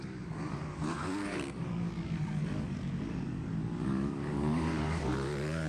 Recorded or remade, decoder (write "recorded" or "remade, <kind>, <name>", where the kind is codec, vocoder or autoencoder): remade, codec, DAC